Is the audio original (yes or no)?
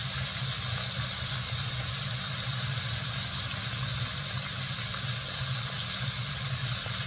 yes